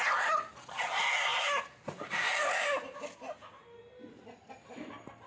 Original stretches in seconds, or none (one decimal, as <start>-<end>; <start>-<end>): 0.0-5.3